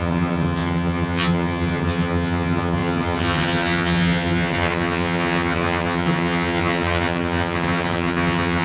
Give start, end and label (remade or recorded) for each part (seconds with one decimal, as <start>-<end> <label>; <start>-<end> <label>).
0.0-8.6 remade